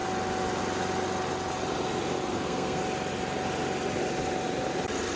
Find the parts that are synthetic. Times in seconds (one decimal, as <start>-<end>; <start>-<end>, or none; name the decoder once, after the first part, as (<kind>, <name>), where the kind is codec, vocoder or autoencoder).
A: 2.3-2.8 (codec, SNAC)